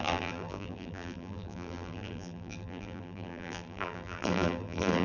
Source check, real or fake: fake